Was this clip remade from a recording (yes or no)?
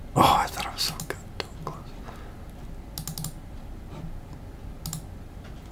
no